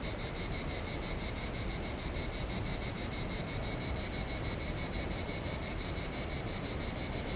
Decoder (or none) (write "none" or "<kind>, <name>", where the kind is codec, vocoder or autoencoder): none